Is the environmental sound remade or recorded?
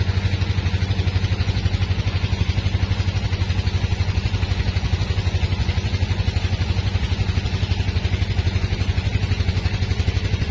remade